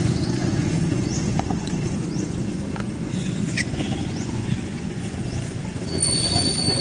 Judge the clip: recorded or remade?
remade